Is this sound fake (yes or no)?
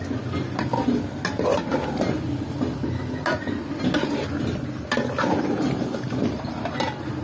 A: no